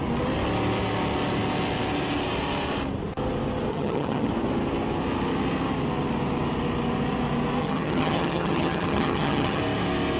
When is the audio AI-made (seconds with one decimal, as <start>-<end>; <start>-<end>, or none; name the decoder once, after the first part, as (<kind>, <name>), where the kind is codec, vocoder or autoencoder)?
3.7-4.3 (vocoder, HiFi-GAN); 7.6-9.6